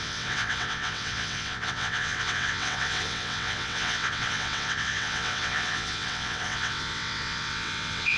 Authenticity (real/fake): fake